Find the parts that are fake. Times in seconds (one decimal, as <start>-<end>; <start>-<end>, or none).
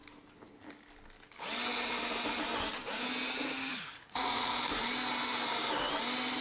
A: 3.7-4.5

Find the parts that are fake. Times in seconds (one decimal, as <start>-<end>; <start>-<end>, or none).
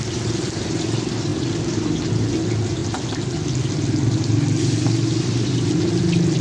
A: none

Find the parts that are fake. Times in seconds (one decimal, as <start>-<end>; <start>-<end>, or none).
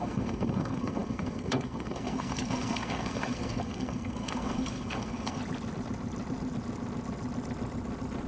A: 0.0-5.4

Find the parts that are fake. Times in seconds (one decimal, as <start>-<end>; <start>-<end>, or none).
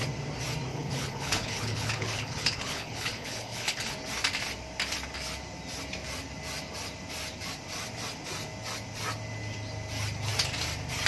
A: 0.7-3.9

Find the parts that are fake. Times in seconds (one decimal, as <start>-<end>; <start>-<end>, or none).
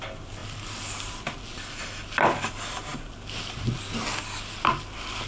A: none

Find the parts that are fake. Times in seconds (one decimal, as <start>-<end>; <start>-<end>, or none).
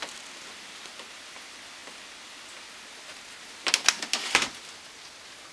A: none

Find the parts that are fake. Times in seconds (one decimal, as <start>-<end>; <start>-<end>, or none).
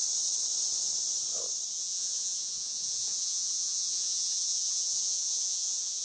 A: 1.7-6.0